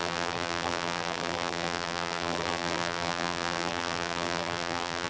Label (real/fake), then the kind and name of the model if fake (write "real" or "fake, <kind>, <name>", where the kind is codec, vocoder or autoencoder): fake, vocoder, BigVGAN v2